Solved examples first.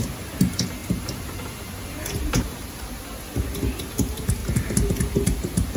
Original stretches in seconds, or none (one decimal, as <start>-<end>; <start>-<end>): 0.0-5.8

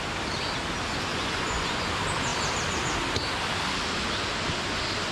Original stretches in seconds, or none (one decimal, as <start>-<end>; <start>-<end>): 0.0-1.1; 1.9-5.1

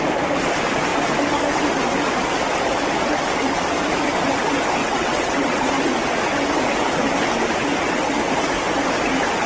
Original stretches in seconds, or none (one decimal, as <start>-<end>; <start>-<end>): 0.0-4.8; 5.7-9.5

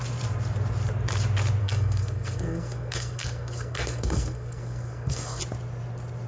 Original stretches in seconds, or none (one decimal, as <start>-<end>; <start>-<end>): 0.0-1.6; 5.4-6.3

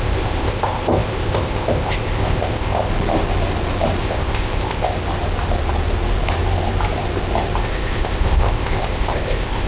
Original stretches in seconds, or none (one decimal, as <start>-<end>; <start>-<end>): 2.9-4.0; 4.9-7.6

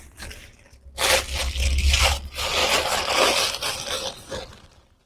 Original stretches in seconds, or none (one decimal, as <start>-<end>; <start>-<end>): 0.0-5.1

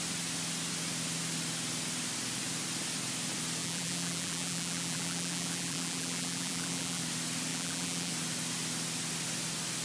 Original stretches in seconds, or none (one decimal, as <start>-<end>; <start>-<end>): 0.0-3.6; 7.0-7.5; 8.1-9.8